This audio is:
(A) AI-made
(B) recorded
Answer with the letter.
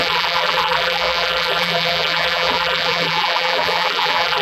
A